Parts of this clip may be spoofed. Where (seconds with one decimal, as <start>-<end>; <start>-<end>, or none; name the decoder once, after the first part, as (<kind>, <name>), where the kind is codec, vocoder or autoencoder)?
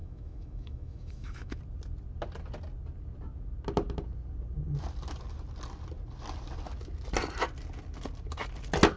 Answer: 0.0-1.6 (autoencoder, DAC-VAE)